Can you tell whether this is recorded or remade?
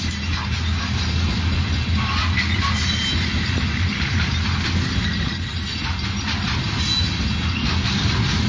recorded